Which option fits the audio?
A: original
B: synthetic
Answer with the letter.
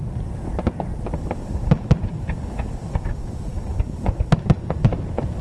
A